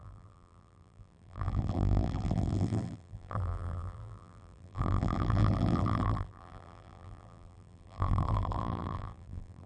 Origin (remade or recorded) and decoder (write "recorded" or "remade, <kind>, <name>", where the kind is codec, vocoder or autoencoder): remade, vocoder, BigVGAN v2